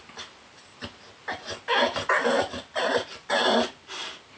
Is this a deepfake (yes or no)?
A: no